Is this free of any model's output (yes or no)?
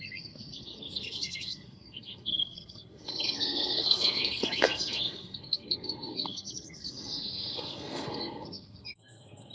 no